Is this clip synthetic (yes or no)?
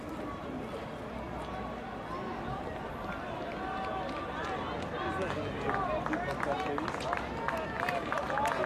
no